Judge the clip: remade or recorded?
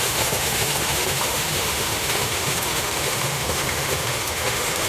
remade